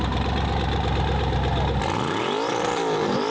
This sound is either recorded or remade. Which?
recorded